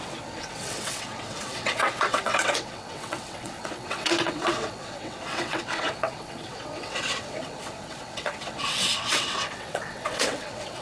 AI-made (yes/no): yes